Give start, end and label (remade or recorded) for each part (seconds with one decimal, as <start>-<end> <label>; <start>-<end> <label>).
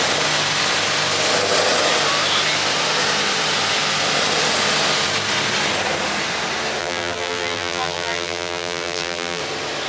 0.0-6.8 recorded; 6.8-9.4 remade; 9.4-9.9 recorded